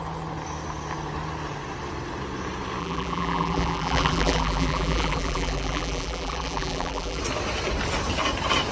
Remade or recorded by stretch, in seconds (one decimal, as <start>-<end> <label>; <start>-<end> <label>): 0.0-2.8 recorded; 2.8-7.2 remade; 7.2-8.7 recorded